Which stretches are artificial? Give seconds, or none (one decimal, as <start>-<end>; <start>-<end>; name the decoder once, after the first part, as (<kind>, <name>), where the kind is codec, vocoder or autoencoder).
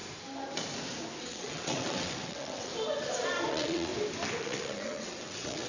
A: 1.2-2.7 (vocoder, WaveNeXt); 3.5-3.9; 4.4-5.7